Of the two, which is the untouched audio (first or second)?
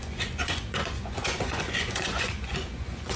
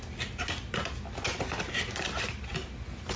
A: second